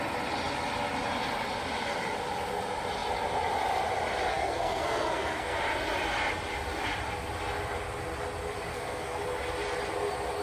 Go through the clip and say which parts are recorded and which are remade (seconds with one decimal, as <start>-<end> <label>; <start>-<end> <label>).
0.0-4.3 recorded; 4.3-5.6 remade; 5.6-8.7 recorded; 8.7-9.2 remade; 9.2-10.4 recorded